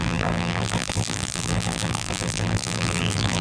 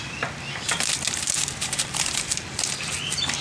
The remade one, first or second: first